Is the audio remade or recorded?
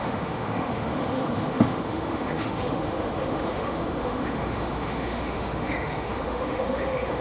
remade